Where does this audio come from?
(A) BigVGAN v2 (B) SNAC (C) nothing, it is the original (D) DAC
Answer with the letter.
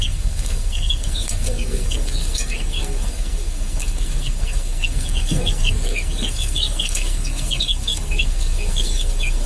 B